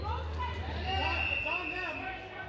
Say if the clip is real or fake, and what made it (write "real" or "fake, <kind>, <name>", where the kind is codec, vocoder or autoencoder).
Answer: real